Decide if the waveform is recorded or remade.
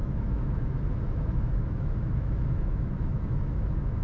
remade